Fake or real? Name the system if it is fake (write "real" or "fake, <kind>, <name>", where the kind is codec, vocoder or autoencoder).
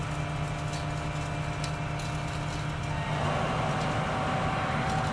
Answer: real